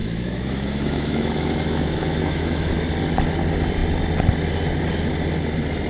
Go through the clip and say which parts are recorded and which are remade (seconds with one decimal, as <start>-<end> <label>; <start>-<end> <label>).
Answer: 0.0-2.7 remade; 2.7-5.9 recorded